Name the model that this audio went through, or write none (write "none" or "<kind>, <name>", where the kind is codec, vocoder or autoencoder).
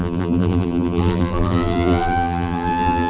vocoder, BigVGAN v2